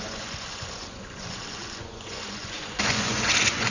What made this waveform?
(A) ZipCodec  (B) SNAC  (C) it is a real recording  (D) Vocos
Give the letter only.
D